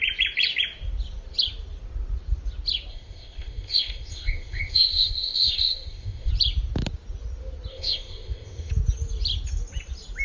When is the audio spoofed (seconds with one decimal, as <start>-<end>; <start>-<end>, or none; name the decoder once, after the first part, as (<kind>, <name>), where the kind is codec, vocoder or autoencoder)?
2.9-6.3 (codec, ZipCodec); 7.7-8.7